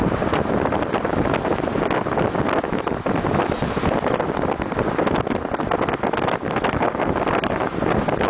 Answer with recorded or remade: recorded